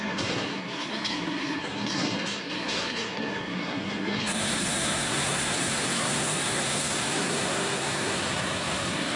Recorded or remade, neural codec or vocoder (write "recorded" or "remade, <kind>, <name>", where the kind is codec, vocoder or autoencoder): remade, codec, SNAC